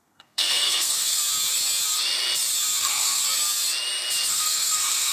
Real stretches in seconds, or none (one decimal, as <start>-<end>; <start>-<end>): 1.2-2.8; 3.2-4.3

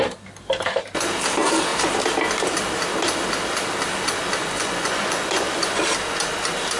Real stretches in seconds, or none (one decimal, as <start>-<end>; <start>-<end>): 0.0-4.4; 5.8-6.8

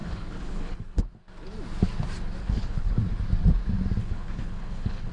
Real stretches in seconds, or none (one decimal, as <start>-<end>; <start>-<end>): 1.0-2.4; 3.0-4.0

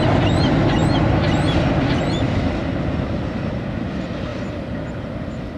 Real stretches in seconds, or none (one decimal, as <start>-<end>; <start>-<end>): 0.0-5.6

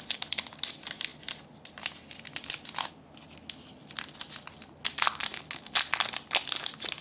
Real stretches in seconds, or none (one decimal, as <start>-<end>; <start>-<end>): 0.0-7.0